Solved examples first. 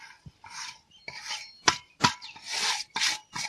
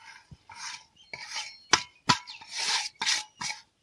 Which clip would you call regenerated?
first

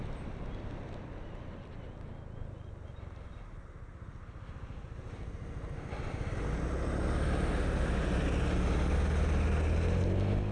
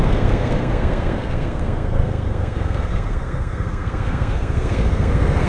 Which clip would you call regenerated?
second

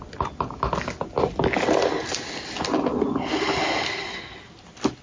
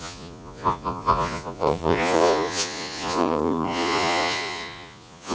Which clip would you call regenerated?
second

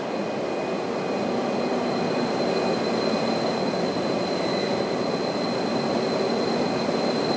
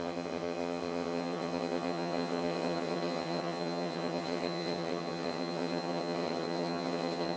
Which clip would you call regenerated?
second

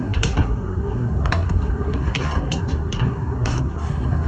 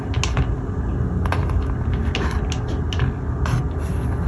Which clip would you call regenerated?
first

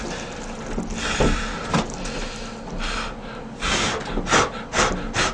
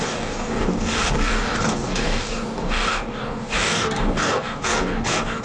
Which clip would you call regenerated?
second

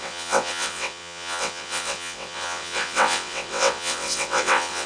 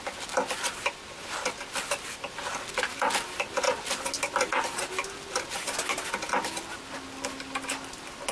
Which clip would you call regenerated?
first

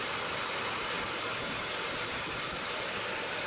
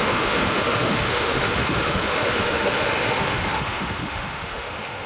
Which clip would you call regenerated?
second